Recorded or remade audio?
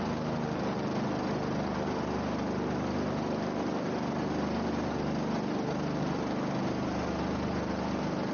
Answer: recorded